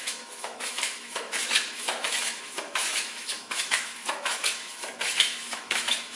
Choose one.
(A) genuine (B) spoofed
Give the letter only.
B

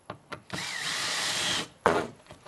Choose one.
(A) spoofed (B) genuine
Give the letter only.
A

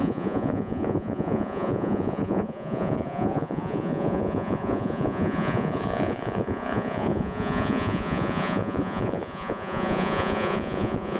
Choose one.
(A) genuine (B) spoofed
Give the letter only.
B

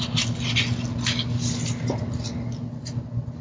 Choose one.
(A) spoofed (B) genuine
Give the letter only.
B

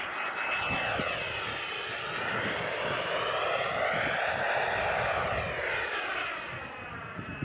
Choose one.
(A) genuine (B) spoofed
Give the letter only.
A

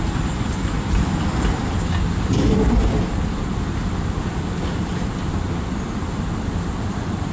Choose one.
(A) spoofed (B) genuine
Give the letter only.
B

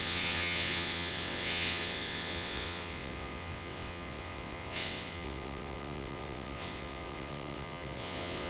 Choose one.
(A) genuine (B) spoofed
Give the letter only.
B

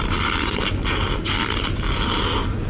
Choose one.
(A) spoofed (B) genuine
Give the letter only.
B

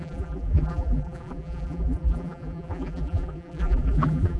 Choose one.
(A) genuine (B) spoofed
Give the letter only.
B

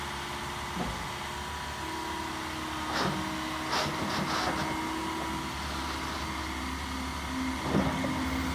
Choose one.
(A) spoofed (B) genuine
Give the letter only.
B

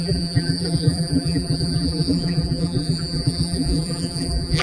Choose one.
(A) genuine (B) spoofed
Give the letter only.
B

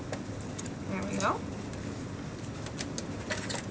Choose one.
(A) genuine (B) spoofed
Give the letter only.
A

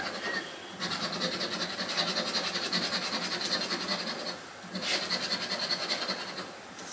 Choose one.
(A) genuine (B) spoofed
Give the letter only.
A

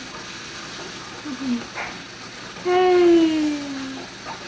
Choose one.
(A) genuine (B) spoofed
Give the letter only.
A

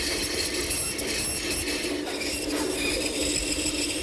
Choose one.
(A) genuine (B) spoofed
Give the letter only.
A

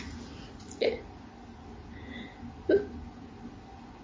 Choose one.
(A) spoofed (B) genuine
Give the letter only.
B